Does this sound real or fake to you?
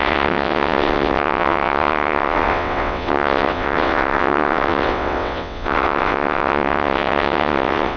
fake